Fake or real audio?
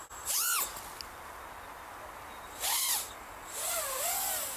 real